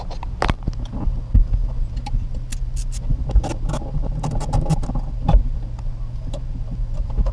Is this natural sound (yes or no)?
yes